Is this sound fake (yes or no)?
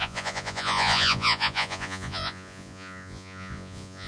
yes